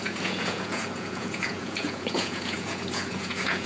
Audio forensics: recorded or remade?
remade